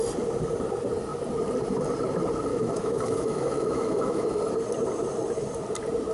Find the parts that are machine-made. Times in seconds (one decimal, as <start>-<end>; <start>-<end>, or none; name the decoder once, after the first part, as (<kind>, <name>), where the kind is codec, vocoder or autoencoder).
2.5-4.4 (autoencoder, DAC-VAE)